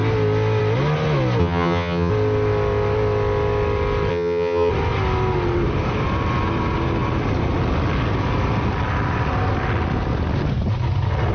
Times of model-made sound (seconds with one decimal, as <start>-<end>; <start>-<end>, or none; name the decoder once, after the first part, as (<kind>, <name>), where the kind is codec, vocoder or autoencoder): 1.4-2.1 (vocoder, HiFi-GAN); 4.1-4.7